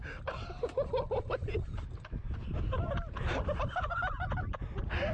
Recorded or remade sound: recorded